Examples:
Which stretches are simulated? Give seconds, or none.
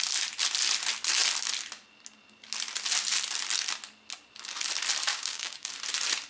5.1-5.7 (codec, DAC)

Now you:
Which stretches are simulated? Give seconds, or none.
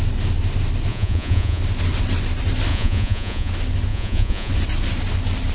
0.9-1.6 (vocoder, Vocos); 2.7-3.5; 3.9-4.5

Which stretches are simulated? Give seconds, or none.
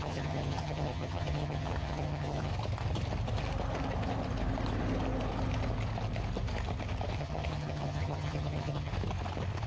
0.0-2.5 (vocoder, HiFi-GAN); 7.2-8.9